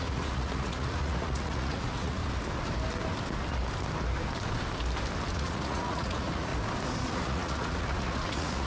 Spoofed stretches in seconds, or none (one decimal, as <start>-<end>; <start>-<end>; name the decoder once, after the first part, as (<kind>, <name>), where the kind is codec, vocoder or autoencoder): 0.0-2.2 (vocoder, Vocos); 5.3-6.5; 7.1-8.7